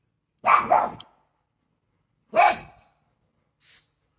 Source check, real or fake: real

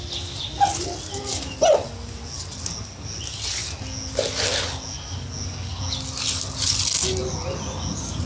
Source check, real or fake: real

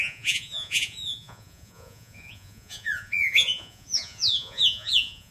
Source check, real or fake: fake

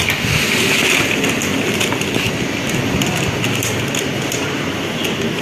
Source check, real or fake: real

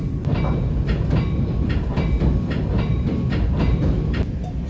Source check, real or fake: real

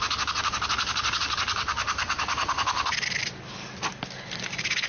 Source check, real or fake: real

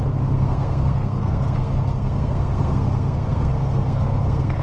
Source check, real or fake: fake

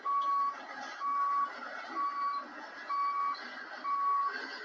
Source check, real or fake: real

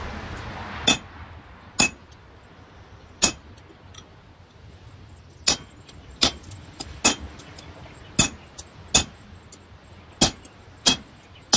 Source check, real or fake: real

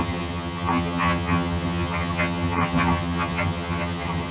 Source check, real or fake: fake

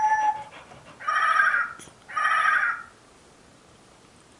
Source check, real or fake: real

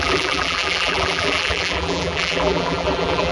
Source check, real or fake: fake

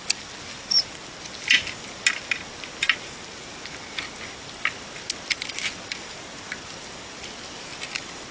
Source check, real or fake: real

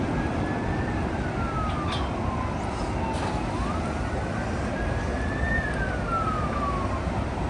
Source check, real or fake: real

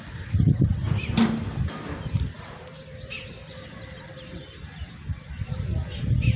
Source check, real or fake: real